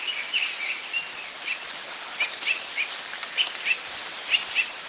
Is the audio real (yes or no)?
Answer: yes